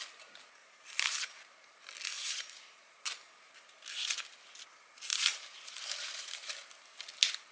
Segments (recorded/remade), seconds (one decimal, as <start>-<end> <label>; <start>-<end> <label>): 0.0-0.6 recorded; 0.6-1.3 remade; 1.3-2.2 recorded; 2.2-2.8 remade; 2.8-5.1 recorded; 5.1-6.7 remade; 6.7-7.5 recorded